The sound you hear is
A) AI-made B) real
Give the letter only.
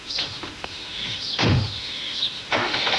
A